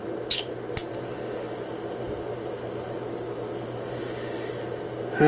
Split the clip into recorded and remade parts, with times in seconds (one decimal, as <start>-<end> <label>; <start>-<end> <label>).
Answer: 0.0-5.3 recorded